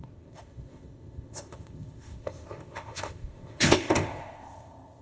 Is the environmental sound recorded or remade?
remade